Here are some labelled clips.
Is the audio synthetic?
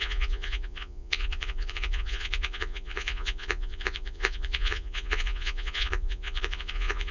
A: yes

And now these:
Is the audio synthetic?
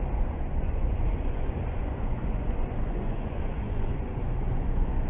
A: yes